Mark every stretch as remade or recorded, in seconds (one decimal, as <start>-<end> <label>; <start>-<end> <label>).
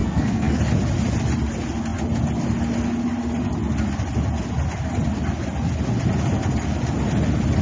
0.0-0.6 remade; 0.6-7.6 recorded